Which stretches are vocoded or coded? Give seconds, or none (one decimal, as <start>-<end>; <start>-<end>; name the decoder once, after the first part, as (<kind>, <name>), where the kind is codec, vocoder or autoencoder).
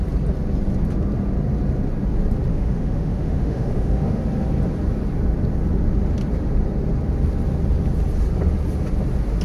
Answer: 2.5-4.2 (autoencoder, DAC-VAE)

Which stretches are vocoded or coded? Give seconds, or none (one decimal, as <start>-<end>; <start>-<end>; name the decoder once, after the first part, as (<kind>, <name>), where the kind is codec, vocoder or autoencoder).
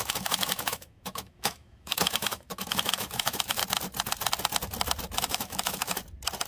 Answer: 0.0-3.6 (autoencoder, DAC-VAE); 5.2-6.0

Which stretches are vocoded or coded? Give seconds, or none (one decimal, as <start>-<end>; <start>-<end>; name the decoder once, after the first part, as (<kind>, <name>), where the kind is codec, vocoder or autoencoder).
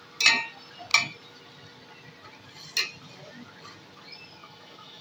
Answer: 4.4-5.0 (autoencoder, DAC-VAE)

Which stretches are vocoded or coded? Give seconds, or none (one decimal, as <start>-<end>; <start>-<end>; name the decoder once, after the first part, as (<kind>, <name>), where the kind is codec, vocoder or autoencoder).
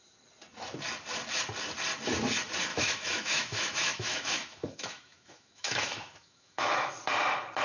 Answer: 2.7-6.9 (autoencoder, DAC-VAE)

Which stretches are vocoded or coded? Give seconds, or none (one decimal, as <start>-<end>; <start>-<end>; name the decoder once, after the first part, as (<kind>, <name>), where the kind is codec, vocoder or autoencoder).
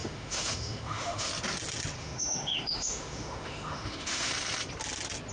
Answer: 0.0-1.3 (autoencoder, DAC-VAE); 2.0-4.3